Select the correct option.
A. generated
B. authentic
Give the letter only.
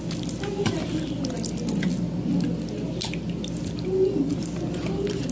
B